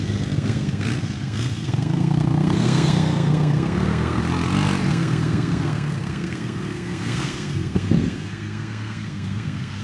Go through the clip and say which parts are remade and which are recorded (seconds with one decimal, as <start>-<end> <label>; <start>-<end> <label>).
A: 0.0-4.2 remade; 4.2-4.9 recorded; 4.9-9.8 remade